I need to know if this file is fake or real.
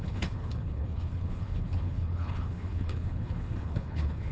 fake